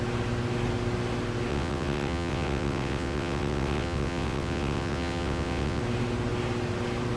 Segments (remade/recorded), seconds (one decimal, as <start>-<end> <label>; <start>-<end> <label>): 0.0-1.5 recorded; 1.5-5.8 remade; 5.8-7.2 recorded